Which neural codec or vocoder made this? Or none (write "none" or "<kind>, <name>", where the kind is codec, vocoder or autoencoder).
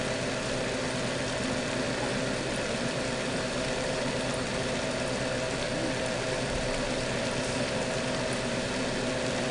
none